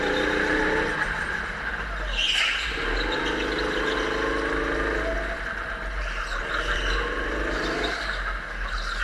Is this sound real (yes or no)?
yes